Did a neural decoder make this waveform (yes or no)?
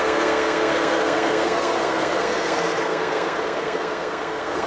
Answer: yes